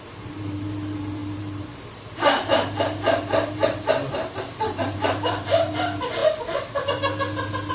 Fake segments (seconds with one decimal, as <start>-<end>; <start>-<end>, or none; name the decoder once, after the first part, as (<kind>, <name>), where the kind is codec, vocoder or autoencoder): 0.0-6.2 (vocoder, BigVGAN v2)